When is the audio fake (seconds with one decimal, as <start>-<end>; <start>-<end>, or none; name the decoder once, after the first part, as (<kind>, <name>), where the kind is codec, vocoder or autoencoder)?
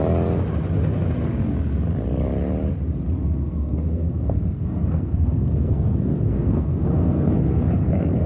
3.4-8.3 (codec, SNAC)